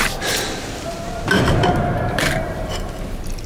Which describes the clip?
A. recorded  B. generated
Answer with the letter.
B